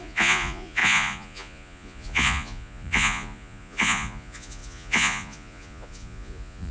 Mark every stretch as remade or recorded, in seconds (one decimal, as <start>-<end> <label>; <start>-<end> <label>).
0.0-6.7 remade

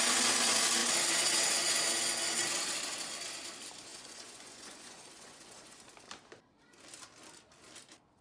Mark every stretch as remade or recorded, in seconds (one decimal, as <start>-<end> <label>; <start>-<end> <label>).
0.0-3.9 recorded; 3.9-5.8 remade; 5.8-8.2 recorded

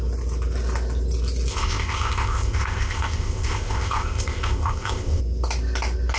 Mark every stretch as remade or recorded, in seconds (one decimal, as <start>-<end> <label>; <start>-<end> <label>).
0.0-1.5 recorded; 1.5-5.2 remade; 5.2-6.2 recorded

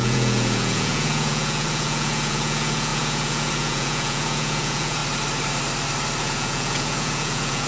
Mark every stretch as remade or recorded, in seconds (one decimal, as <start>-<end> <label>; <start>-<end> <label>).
0.0-5.0 remade; 5.0-6.2 recorded; 6.2-7.7 remade

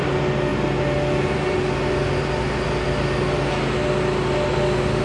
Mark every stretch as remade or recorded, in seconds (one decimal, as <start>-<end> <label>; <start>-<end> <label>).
0.0-5.0 recorded

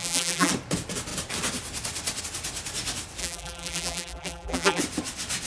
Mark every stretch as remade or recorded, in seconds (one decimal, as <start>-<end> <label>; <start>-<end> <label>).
0.0-0.5 remade; 0.5-3.2 recorded; 3.2-4.8 remade; 4.8-5.5 recorded